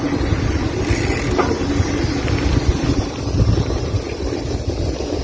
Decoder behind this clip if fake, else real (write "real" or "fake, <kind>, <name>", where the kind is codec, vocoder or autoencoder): real